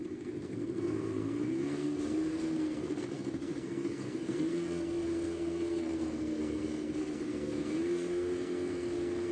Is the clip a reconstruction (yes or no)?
yes